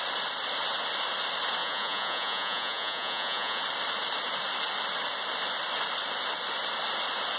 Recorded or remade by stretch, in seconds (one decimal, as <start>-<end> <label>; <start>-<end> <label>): 0.0-1.6 recorded; 1.6-3.6 remade; 3.6-7.4 recorded

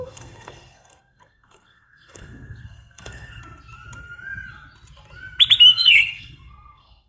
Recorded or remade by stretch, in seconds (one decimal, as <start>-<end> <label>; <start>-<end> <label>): 0.0-3.4 remade; 3.4-5.7 recorded; 5.7-7.1 remade

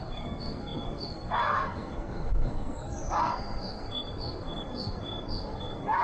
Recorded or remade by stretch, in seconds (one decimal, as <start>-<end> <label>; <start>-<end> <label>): 0.0-6.0 remade

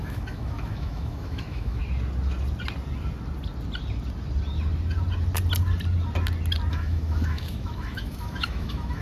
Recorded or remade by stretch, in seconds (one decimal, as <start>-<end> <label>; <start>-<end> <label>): 0.0-1.8 remade; 1.8-6.7 recorded; 6.7-9.0 remade

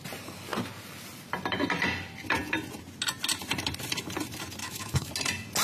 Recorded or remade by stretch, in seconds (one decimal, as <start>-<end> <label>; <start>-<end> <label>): 0.0-4.6 recorded; 4.6-5.1 remade; 5.1-5.6 recorded

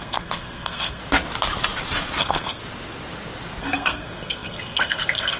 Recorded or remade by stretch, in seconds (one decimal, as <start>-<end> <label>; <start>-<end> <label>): 0.0-1.0 remade; 1.0-2.2 recorded; 2.2-2.6 remade; 2.6-3.6 recorded; 3.6-5.4 remade